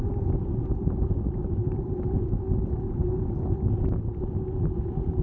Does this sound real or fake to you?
real